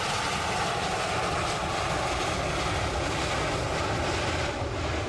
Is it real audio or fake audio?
real